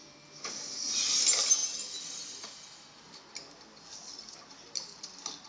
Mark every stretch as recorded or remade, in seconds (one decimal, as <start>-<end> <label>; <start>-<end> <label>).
0.0-5.5 recorded